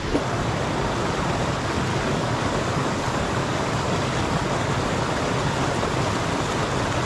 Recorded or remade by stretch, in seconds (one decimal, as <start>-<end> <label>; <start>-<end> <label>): 0.0-1.9 recorded; 1.9-4.4 remade; 4.4-7.1 recorded